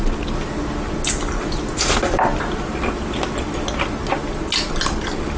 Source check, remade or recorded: recorded